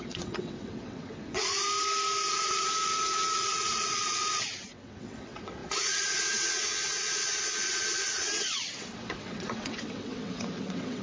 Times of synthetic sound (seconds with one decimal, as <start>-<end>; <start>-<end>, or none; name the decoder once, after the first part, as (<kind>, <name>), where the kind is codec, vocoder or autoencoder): 0.0-1.5 (vocoder, WaveNeXt); 2.3-11.0

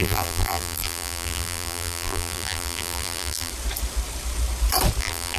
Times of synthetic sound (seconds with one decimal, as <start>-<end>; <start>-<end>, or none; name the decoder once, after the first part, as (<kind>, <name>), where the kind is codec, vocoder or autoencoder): 0.0-3.5 (vocoder, BigVGAN v2); 5.0-5.4

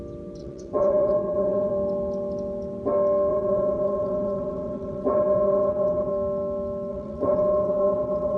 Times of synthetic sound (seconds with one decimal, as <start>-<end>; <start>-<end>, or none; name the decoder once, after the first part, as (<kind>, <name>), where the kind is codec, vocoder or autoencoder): 0.4-1.7 (vocoder, WaveNeXt); 3.3-6.1; 6.9-8.4

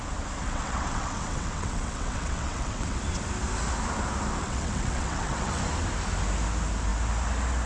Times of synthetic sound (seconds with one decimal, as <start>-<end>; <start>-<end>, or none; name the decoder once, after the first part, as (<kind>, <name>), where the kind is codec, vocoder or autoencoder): 0.4-3.0 (vocoder, WaveNeXt); 4.4-5.6

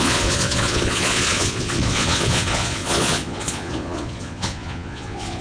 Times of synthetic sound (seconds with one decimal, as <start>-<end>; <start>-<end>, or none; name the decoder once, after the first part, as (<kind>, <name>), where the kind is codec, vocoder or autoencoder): 0.0-5.4 (vocoder, Vocos)

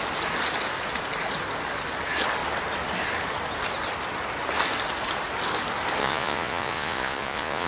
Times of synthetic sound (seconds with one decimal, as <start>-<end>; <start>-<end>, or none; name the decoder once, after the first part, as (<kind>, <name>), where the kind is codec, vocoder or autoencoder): 6.0-7.7 (vocoder, Vocos)

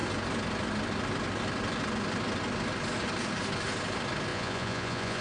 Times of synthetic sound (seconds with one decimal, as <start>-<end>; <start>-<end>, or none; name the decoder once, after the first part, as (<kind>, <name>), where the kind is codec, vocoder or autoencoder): 4.3-5.2 (vocoder, Vocos)